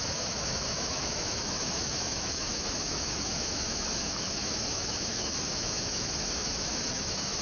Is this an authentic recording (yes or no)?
no